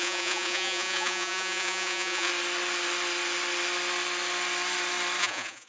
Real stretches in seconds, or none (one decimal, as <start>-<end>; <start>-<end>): 2.3-5.2